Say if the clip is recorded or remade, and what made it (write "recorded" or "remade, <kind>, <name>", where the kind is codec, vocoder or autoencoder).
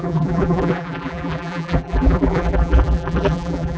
remade, vocoder, BigVGAN v2